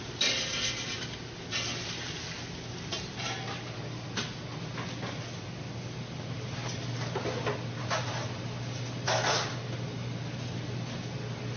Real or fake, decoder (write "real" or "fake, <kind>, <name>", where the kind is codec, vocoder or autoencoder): real